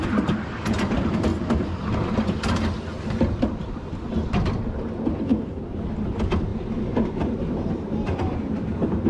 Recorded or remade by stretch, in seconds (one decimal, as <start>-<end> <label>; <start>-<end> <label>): 0.0-9.1 recorded